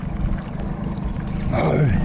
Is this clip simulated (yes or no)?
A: no